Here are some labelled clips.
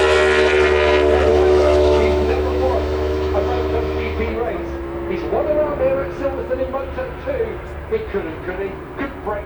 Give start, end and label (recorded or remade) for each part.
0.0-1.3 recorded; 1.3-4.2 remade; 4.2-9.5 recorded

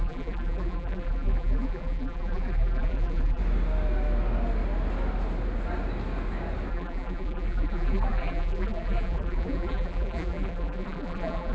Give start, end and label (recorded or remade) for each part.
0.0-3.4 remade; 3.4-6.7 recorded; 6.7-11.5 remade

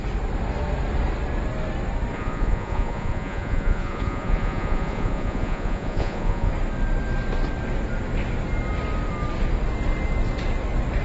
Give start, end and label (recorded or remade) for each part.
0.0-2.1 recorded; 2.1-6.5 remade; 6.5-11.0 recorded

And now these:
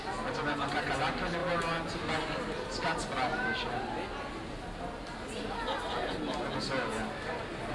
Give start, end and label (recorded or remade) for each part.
0.0-7.7 recorded